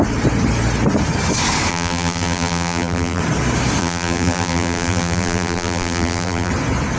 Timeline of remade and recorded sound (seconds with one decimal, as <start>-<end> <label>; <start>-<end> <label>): 0.0-1.7 recorded; 1.7-3.2 remade; 3.2-3.8 recorded; 3.8-6.5 remade; 6.5-7.0 recorded